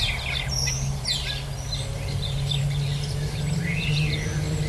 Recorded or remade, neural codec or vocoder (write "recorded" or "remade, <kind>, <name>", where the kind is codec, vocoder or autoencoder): recorded